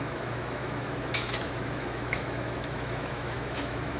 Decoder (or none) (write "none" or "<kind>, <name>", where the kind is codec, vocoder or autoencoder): autoencoder, DAC-VAE